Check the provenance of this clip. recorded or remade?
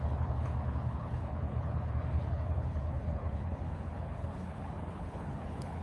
remade